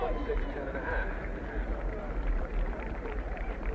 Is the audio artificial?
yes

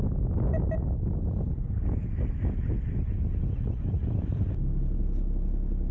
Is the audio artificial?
no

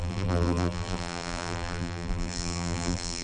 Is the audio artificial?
yes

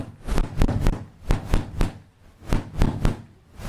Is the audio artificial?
no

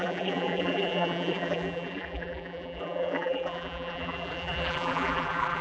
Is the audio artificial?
yes